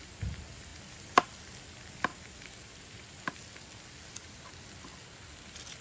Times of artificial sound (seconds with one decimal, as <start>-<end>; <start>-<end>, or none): none